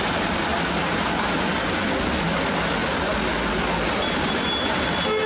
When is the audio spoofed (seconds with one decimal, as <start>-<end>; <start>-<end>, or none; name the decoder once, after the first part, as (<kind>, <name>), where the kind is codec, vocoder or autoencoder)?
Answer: none